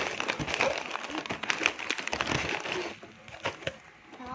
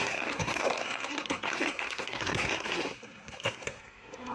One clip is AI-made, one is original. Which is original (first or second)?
first